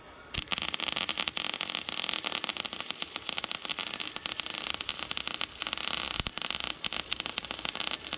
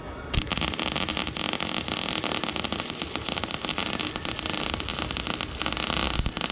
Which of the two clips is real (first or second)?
second